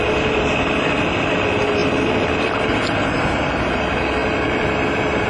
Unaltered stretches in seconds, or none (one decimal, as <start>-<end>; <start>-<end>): 0.0-5.3